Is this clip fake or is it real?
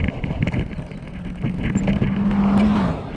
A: real